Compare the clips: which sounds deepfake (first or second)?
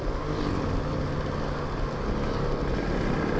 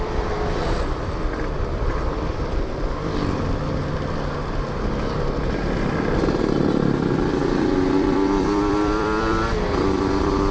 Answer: second